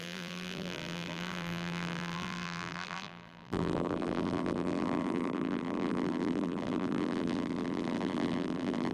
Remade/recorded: remade